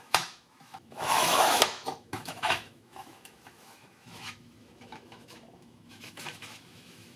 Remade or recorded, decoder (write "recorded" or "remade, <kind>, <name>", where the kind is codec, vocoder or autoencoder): remade, autoencoder, DAC-VAE